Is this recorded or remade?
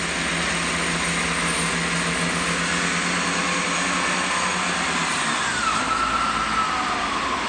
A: recorded